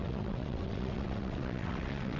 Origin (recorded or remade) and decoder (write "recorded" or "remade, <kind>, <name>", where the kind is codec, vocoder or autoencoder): remade, vocoder, WaveNeXt